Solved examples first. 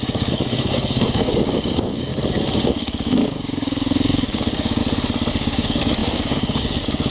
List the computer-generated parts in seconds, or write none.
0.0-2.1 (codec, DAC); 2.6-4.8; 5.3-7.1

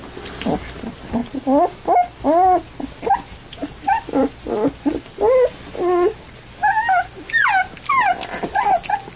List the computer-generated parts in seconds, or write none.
none

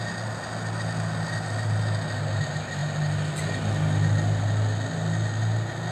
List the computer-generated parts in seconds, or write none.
none

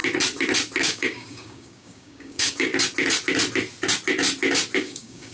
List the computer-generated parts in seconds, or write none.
0.8-2.7 (codec, DAC); 4.8-5.3